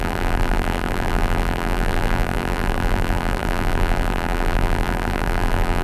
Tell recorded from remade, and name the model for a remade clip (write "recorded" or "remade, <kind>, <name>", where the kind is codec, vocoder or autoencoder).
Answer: remade, vocoder, BigVGAN v2